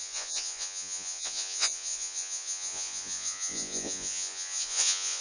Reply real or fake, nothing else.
fake